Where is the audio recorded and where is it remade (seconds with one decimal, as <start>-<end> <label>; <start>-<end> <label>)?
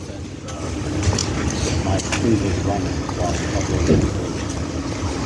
0.0-5.3 recorded